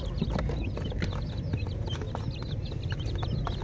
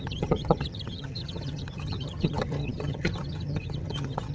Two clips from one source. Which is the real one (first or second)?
first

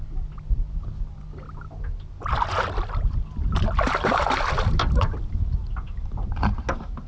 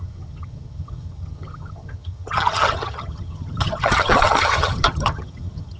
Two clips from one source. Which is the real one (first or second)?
first